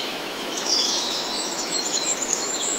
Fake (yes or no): yes